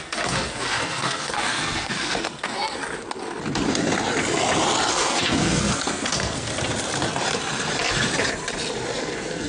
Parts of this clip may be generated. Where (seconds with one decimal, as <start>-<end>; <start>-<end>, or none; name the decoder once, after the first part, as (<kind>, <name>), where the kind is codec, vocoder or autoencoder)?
0.0-2.8 (codec, SNAC); 4.9-6.5; 9.0-9.5